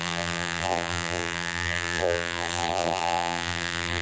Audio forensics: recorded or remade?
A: remade